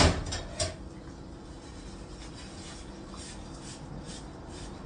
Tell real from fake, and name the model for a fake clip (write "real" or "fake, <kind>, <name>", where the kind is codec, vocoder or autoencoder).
real